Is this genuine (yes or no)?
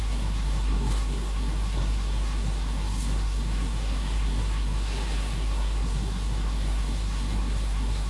no